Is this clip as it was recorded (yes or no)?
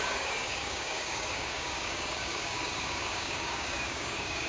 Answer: no